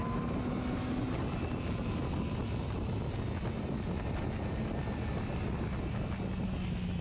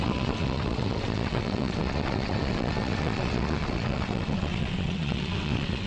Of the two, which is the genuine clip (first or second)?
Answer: first